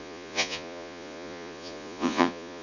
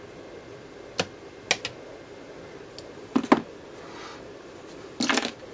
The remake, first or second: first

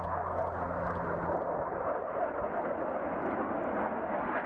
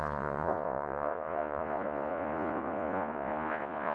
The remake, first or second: second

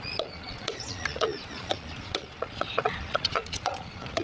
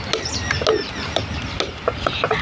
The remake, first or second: first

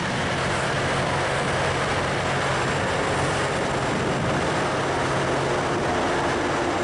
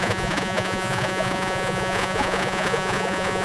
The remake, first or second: second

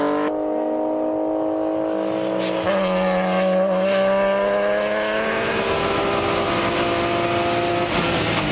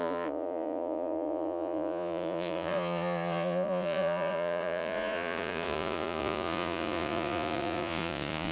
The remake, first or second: second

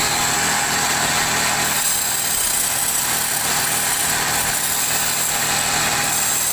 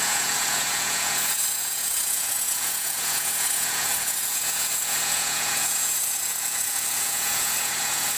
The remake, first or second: second